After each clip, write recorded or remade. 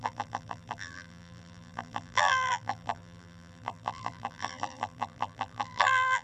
remade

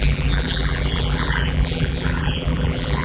remade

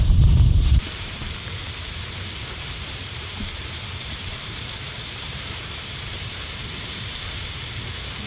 remade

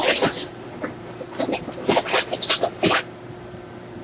remade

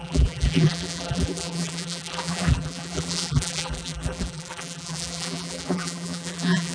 remade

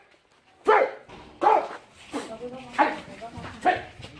recorded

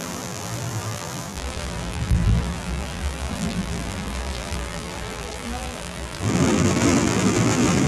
remade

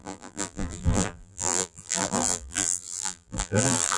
remade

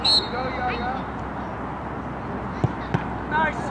recorded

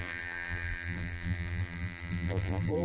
remade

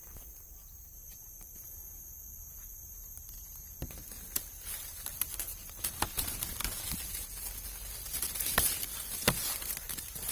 recorded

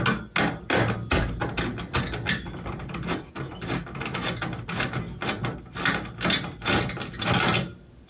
recorded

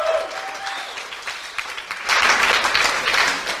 recorded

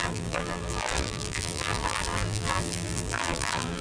remade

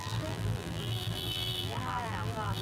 remade